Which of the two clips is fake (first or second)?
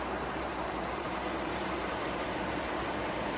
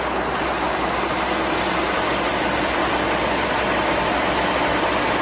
first